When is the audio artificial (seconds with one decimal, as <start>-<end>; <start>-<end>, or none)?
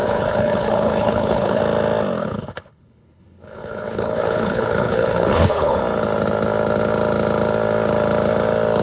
0.0-1.6; 2.2-5.8